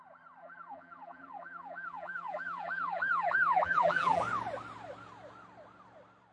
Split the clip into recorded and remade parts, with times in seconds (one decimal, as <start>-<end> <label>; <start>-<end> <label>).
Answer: 0.0-0.4 recorded; 0.4-4.2 remade; 4.2-6.3 recorded